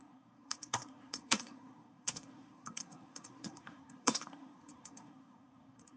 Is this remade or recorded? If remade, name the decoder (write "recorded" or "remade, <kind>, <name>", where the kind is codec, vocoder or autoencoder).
remade, codec, SNAC